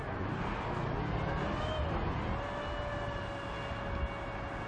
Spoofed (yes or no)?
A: no